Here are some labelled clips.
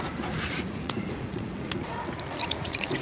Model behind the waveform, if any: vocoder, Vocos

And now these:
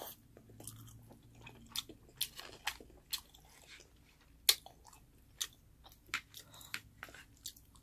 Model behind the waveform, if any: none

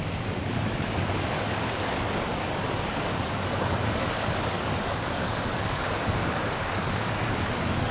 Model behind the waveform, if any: codec, DAC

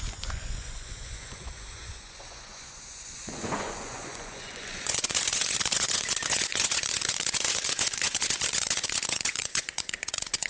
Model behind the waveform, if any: vocoder, Vocos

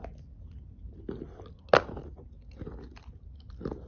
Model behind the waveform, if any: none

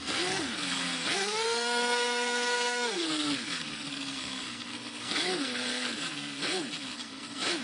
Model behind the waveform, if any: codec, SNAC